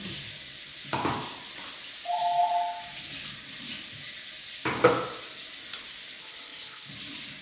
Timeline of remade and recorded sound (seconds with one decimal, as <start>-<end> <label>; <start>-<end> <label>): 0.0-6.2 recorded; 6.2-6.9 remade; 6.9-7.4 recorded